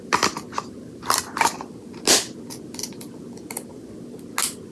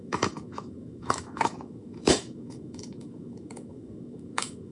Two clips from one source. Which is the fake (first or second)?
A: second